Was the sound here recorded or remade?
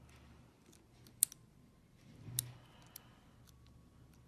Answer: recorded